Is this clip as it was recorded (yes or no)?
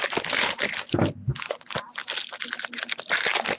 yes